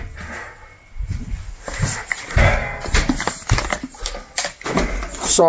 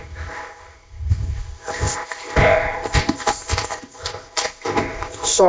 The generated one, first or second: second